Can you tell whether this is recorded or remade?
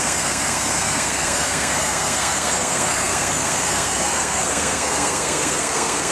remade